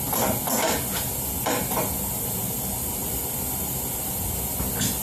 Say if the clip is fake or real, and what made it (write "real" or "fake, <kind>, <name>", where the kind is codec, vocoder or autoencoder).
real